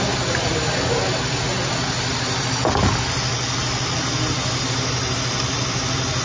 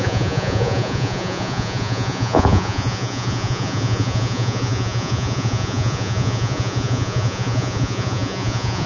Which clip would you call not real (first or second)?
second